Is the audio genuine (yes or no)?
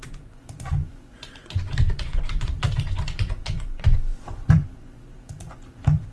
no